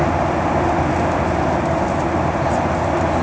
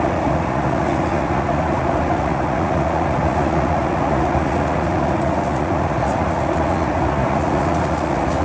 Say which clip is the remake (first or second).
second